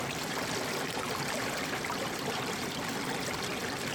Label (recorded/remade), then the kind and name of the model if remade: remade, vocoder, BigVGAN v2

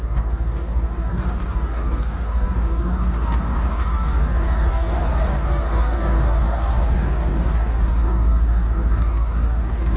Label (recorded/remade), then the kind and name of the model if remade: remade, codec, DAC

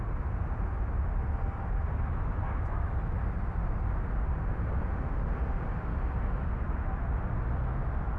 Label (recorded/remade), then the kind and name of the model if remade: recorded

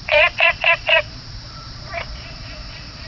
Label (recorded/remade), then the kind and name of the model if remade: remade, vocoder, Vocos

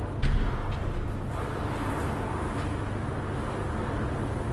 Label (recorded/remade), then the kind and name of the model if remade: recorded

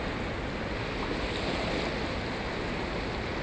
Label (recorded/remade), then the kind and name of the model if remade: recorded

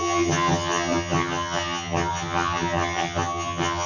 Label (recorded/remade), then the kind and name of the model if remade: remade, vocoder, HiFi-GAN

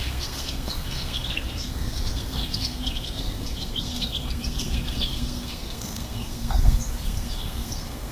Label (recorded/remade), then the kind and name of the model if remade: remade, codec, SNAC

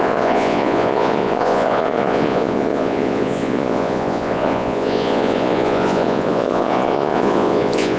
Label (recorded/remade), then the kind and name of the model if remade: remade, vocoder, Vocos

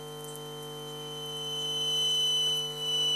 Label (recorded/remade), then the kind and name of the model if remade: recorded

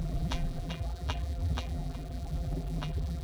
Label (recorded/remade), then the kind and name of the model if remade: remade, vocoder, BigVGAN v2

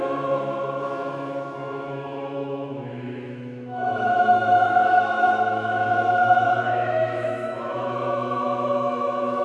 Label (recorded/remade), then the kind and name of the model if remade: remade, autoencoder, DAC-VAE